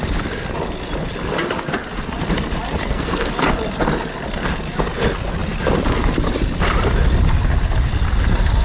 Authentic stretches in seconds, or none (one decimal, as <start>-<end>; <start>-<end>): 0.0-2.8; 3.3-8.6